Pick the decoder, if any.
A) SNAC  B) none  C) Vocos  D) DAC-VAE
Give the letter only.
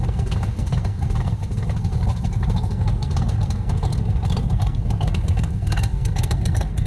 A